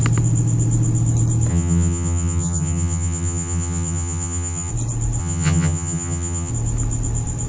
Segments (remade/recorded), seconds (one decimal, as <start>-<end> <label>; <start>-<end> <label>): 0.0-1.5 recorded; 1.5-4.7 remade; 4.7-5.2 recorded; 5.2-6.5 remade; 6.5-7.5 recorded